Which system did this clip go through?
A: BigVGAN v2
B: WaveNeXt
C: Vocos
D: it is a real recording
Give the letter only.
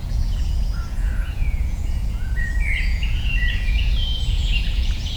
C